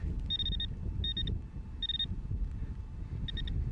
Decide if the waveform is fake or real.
real